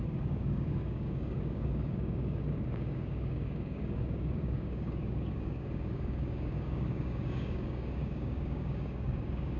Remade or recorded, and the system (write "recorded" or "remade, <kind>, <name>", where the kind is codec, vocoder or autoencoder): remade, codec, DAC